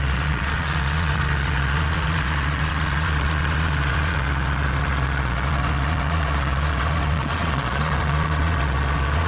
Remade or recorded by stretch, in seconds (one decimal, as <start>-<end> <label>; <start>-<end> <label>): 0.0-9.3 remade